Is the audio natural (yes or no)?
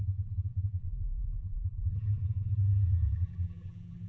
no